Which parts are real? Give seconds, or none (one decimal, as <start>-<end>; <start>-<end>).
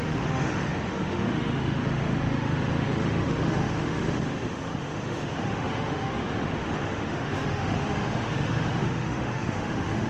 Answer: none